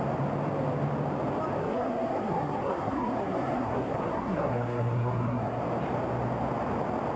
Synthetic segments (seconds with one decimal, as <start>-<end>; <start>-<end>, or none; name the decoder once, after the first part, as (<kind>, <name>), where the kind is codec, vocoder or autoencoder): 1.6-5.6 (codec, SNAC)